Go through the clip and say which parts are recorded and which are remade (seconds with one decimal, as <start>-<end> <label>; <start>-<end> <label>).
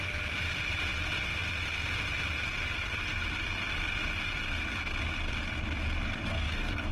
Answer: 0.0-6.3 recorded; 6.3-6.9 remade